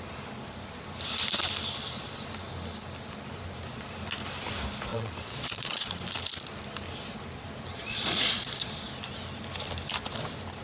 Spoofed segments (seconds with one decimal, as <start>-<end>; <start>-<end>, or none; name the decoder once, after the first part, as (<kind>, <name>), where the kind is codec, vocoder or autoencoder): 4.9-5.9 (vocoder, Vocos); 7.7-8.7